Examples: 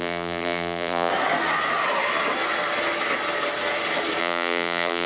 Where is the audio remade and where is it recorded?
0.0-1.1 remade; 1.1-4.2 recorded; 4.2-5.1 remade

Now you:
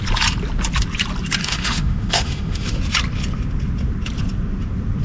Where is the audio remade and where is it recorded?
0.0-1.4 recorded; 1.4-2.8 remade; 2.8-5.0 recorded

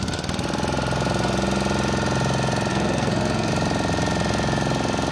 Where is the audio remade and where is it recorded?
0.0-2.7 recorded; 2.7-3.5 remade; 3.5-5.1 recorded

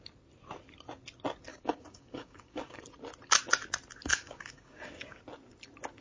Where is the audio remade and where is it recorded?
0.0-1.5 recorded; 1.5-2.8 remade; 2.8-4.1 recorded; 4.1-5.2 remade; 5.2-6.0 recorded